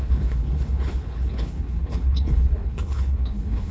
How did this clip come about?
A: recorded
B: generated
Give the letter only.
B